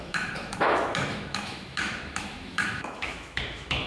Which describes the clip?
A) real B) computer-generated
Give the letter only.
B